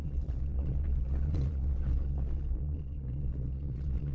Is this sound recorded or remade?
remade